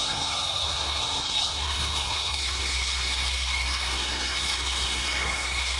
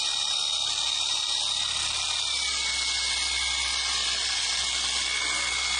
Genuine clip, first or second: second